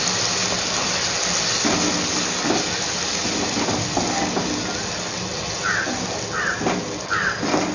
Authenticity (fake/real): real